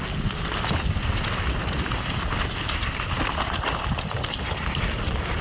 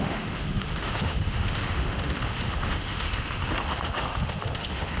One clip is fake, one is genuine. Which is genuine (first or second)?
first